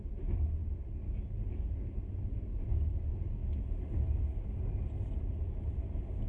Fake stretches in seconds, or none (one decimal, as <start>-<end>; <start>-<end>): 0.0-0.6; 2.3-3.4; 5.2-6.3